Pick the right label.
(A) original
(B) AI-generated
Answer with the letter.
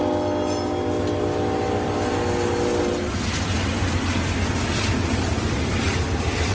A